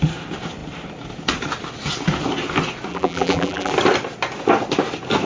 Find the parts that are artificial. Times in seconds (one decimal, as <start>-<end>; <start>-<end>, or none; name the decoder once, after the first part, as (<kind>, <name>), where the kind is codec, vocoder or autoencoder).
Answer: 2.9-3.7 (vocoder, BigVGAN v2)